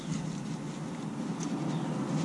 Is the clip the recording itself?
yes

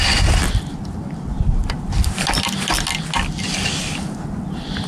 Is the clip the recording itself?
yes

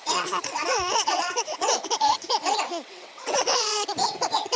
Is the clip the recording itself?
no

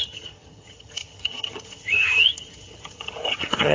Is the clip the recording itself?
no